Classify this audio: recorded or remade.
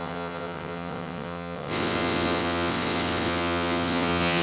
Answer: remade